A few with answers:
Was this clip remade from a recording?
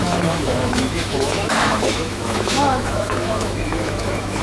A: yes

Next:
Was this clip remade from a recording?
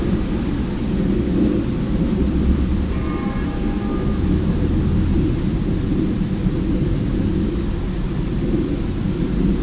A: no